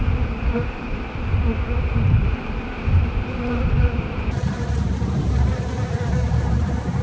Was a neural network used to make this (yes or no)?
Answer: yes